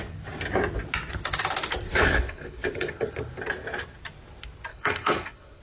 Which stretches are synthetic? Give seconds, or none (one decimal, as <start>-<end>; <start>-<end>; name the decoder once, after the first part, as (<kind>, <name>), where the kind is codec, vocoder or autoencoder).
1.9-3.0 (codec, HILCodec); 4.7-5.6